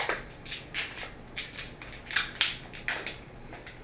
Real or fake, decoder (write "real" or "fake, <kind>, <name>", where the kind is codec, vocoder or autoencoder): real